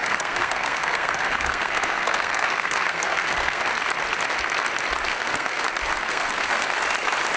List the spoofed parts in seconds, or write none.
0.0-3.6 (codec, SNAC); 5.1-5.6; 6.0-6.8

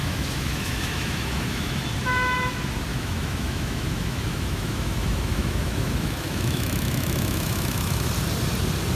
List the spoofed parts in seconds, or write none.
0.0-1.8 (autoencoder, DAC-VAE); 2.9-8.1

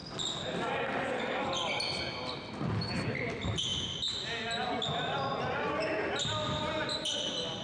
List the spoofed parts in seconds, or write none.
none

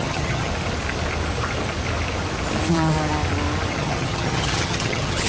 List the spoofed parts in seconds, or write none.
0.0-0.5 (vocoder, HiFi-GAN); 3.7-5.3

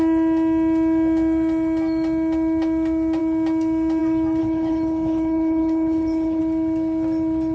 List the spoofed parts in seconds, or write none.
4.4-6.4 (codec, HILCodec)